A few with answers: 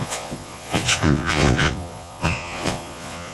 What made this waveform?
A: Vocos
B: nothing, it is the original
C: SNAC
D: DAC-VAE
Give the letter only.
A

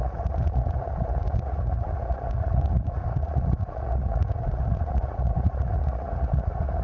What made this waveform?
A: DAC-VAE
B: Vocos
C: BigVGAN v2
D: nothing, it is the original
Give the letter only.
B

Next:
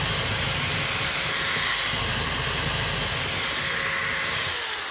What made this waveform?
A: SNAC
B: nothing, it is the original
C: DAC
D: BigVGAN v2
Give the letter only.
B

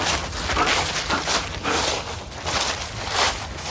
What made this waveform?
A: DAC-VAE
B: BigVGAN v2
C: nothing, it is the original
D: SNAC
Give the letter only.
C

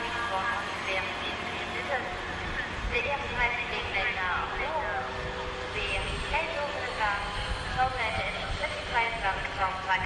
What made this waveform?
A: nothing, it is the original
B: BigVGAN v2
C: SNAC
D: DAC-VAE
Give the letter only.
A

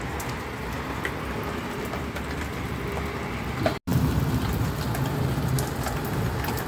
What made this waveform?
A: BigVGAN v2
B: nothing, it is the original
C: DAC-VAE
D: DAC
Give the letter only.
B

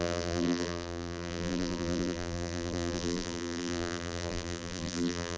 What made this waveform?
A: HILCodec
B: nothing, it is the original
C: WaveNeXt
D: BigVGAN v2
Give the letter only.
D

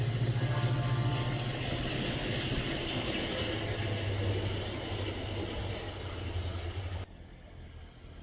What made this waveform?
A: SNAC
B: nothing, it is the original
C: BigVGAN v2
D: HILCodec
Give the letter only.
B